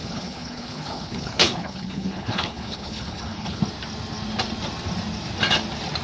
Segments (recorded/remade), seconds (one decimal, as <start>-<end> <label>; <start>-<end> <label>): 0.0-3.6 remade; 3.6-6.0 recorded